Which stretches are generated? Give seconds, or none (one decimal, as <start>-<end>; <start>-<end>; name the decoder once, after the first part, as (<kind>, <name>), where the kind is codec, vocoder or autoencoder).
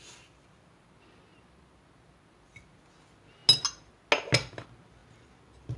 none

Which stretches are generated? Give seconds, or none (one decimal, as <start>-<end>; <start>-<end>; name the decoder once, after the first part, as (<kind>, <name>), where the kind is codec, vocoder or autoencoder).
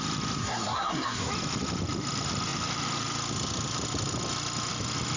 0.4-1.3 (codec, SNAC)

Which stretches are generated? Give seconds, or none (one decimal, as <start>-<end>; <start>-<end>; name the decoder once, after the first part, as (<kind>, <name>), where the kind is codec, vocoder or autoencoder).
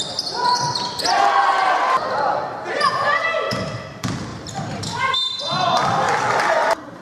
4.3-4.8 (vocoder, BigVGAN v2)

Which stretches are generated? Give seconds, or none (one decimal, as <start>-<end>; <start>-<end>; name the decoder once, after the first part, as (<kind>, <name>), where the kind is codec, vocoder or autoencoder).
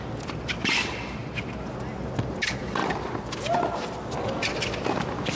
none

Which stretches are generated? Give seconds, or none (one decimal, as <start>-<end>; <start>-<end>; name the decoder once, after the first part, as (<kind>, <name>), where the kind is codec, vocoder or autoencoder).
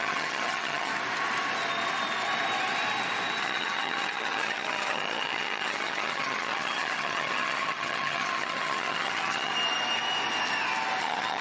0.0-0.9 (vocoder, HiFi-GAN); 3.4-9.5; 11.0-11.4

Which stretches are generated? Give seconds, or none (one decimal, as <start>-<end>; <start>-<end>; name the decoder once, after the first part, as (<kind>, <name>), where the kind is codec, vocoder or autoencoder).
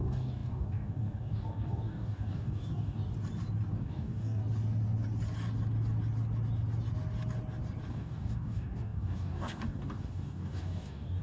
0.0-3.0 (codec, DAC); 3.7-4.4; 7.9-11.2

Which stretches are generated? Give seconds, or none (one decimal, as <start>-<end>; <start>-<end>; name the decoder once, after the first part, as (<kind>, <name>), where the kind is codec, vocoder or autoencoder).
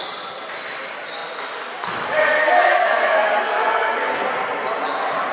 2.4-4.3 (codec, SNAC)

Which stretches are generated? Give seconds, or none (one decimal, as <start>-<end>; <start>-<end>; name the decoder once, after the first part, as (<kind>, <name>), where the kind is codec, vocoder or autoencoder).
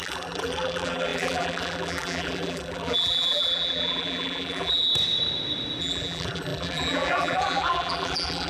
0.0-4.9 (vocoder, BigVGAN v2); 5.8-8.5